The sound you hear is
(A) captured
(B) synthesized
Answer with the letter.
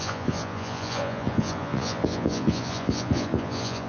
B